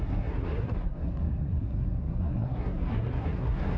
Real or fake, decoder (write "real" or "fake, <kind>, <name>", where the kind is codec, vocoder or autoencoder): fake, codec, SNAC